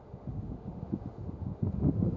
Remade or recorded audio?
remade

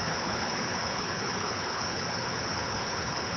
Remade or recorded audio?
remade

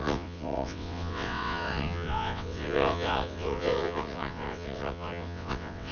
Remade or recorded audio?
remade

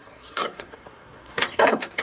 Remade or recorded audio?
remade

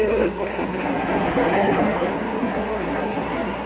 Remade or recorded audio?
remade